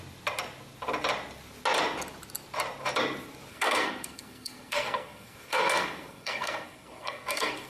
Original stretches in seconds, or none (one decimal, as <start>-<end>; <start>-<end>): 0.0-3.5